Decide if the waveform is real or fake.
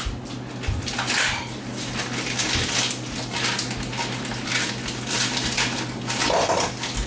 real